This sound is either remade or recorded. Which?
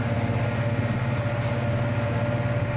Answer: recorded